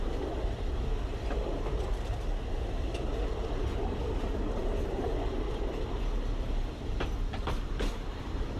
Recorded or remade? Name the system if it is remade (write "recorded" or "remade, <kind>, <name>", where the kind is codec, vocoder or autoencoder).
remade, vocoder, BigVGAN v2